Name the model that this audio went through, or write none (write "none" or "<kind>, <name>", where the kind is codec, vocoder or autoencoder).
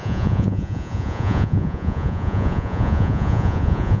vocoder, Vocos